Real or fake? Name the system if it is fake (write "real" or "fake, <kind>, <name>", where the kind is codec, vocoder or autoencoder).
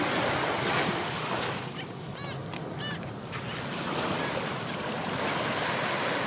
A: real